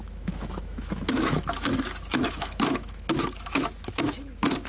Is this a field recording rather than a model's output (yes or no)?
no